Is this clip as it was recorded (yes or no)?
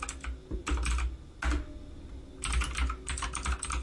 yes